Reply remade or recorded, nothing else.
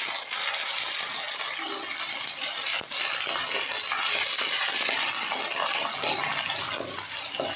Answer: recorded